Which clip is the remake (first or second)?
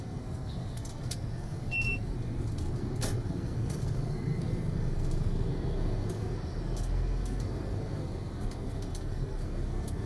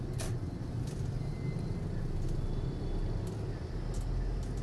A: first